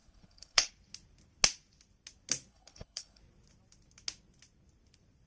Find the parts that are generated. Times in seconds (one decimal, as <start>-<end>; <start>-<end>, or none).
0.0-0.7; 2.5-3.2